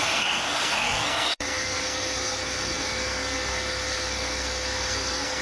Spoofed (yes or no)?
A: yes